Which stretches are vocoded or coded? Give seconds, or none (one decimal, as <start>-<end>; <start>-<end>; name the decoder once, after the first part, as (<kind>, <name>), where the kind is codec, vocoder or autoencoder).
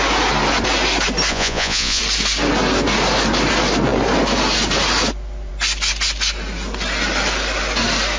1.3-2.0 (vocoder, Vocos)